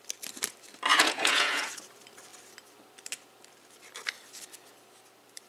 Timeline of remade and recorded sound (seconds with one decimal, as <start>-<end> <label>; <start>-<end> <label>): 0.0-0.9 recorded; 0.9-1.7 remade; 1.7-5.5 recorded